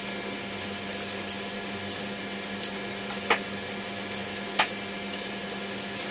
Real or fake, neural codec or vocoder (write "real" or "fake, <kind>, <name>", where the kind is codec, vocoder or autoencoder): real